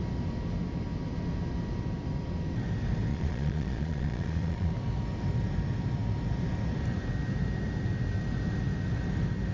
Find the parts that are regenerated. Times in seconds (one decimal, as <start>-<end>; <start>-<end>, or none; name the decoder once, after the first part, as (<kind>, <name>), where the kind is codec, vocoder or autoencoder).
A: 3.1-4.7 (vocoder, Vocos)